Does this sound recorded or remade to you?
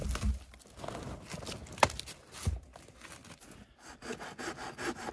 recorded